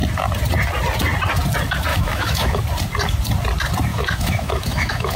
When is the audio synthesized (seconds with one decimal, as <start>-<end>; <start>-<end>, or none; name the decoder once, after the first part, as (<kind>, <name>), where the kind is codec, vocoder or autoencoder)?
1.9-2.6 (autoencoder, DAC-VAE); 3.9-5.2